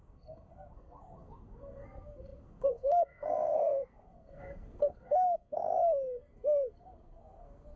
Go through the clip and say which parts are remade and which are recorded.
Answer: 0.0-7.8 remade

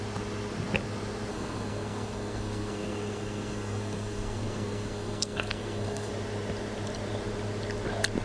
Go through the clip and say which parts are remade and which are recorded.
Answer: 0.0-1.3 recorded; 1.3-6.1 remade; 6.1-8.2 recorded

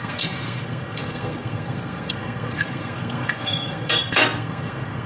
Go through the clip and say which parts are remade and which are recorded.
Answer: 0.0-5.1 remade

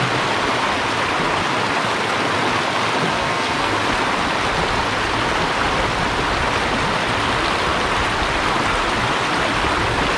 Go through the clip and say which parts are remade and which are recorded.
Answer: 0.0-3.1 recorded; 3.1-3.7 remade; 3.7-10.2 recorded

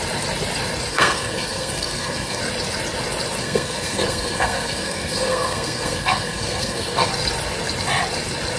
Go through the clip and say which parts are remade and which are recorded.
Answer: 0.0-0.9 recorded; 0.9-2.4 remade; 2.4-3.4 recorded; 3.4-7.1 remade; 7.1-8.6 recorded

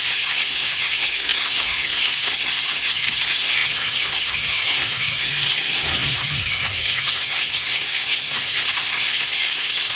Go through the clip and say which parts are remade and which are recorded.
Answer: 0.0-10.0 remade

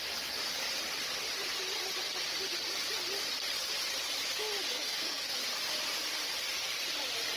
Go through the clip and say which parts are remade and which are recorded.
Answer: 0.0-4.7 recorded; 4.7-5.3 remade; 5.3-7.4 recorded

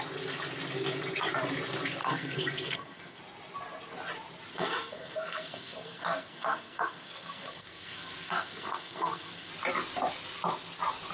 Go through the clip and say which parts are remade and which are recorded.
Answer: 0.0-2.0 recorded; 2.0-3.2 remade; 3.2-4.5 recorded; 4.5-9.5 remade; 9.5-11.1 recorded